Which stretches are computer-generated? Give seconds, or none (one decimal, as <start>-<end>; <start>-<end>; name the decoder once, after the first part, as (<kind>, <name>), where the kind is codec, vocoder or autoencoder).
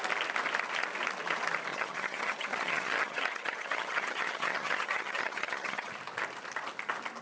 1.7-5.9 (vocoder, HiFi-GAN)